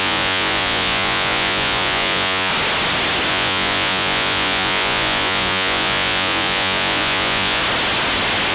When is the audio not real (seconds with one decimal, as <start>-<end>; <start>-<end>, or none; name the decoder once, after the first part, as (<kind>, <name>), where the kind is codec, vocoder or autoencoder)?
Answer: 0.0-2.5 (vocoder, Vocos); 3.3-7.6